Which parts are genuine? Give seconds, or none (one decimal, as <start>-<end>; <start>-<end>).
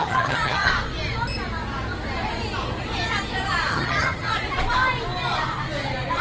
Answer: 0.7-3.7; 4.3-6.2